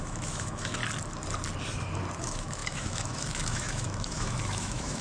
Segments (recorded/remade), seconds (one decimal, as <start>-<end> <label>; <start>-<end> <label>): 0.0-0.8 remade; 0.8-2.2 recorded; 2.2-5.0 remade